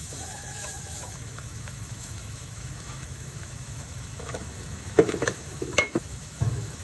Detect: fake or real fake